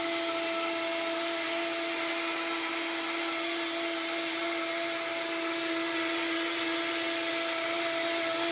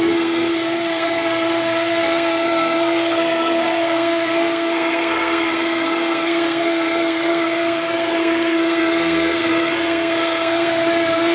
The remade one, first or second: second